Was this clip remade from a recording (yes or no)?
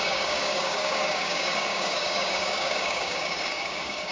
yes